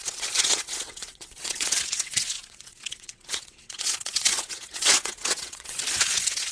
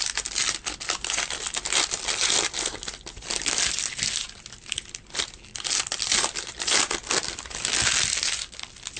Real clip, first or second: second